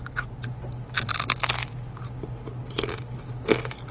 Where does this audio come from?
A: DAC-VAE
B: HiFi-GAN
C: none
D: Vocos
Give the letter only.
C